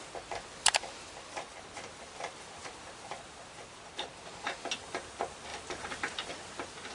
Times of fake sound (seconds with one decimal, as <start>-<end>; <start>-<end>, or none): 2.6-4.3; 5.5-6.3